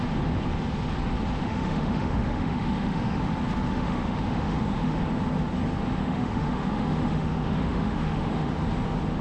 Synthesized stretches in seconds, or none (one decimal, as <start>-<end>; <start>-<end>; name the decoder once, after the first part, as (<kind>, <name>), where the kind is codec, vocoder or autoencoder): 1.4-3.2 (autoencoder, DAC-VAE); 3.7-5.0; 6.0-8.5

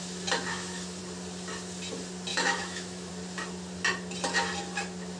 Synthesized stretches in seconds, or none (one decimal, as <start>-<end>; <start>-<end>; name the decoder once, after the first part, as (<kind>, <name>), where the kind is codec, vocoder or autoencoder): 0.5-1.0 (autoencoder, DAC-VAE); 2.3-3.1

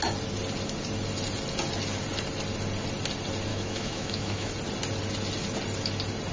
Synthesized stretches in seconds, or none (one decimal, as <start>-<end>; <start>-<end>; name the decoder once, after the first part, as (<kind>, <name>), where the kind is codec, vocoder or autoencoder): 3.5-4.5 (autoencoder, DAC-VAE)

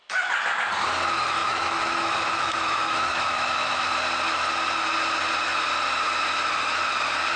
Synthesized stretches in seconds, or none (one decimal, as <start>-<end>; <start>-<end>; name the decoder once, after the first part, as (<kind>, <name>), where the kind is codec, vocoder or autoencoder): 1.4-3.9 (autoencoder, DAC-VAE)

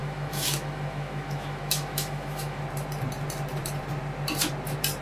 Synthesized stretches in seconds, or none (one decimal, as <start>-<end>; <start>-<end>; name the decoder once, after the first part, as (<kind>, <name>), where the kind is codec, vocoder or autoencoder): 0.0-2.6 (autoencoder, DAC-VAE)

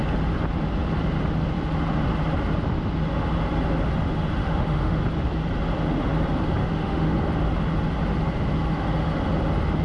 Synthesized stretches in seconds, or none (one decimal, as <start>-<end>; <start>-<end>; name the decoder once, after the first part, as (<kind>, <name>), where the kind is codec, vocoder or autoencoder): 4.4-5.0 (autoencoder, DAC-VAE); 6.6-7.1